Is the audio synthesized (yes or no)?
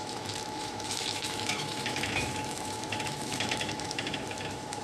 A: yes